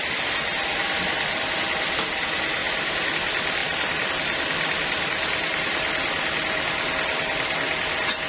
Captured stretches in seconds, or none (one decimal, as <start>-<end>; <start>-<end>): 0.0-0.7; 1.6-3.6; 4.1-8.3